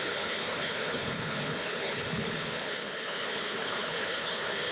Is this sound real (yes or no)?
no